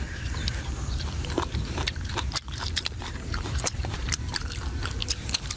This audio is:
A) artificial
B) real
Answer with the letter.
A